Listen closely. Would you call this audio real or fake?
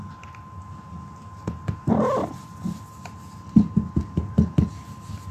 real